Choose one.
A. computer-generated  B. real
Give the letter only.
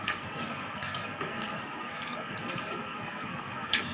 A